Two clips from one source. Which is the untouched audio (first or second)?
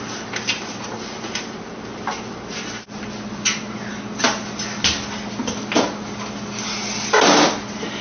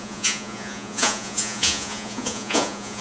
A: first